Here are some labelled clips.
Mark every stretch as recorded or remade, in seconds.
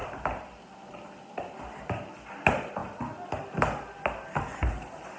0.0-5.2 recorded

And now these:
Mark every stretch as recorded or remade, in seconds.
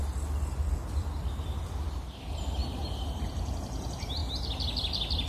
0.0-2.6 recorded; 2.6-3.5 remade; 3.5-5.3 recorded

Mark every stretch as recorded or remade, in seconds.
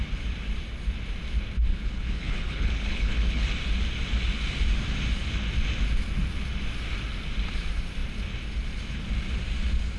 0.0-1.7 recorded; 1.7-3.5 remade; 3.5-10.0 recorded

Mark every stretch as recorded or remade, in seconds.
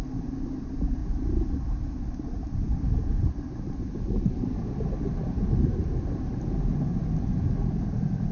0.0-8.3 recorded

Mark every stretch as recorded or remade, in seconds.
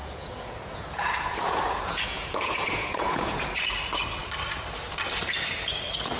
0.0-3.7 remade; 3.7-6.2 recorded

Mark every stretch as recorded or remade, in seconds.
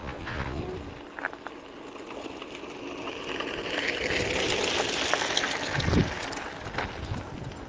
0.0-0.6 remade; 0.6-7.7 recorded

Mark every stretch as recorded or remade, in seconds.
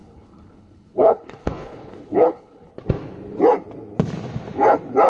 0.0-2.7 remade; 2.7-5.1 recorded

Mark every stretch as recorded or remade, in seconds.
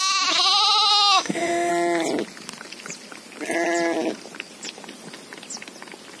0.0-0.9 recorded; 0.9-1.7 remade; 1.7-6.2 recorded